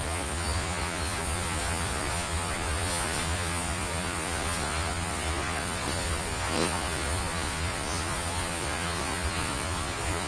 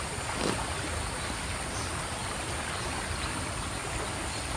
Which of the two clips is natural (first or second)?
second